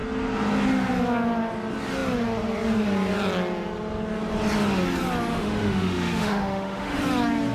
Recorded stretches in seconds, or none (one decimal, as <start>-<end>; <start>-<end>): 0.0-5.3; 7.0-7.5